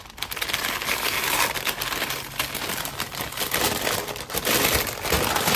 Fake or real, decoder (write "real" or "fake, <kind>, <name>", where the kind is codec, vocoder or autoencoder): real